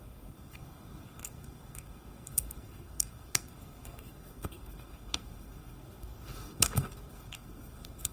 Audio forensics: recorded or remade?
remade